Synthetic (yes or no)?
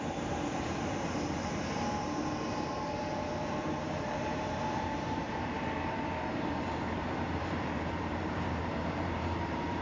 yes